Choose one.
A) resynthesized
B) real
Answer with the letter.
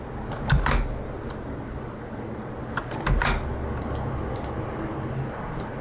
B